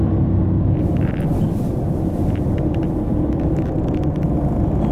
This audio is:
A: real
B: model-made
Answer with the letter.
A